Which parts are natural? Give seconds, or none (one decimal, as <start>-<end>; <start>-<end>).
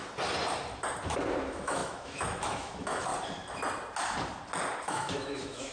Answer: 0.0-1.4; 3.1-4.8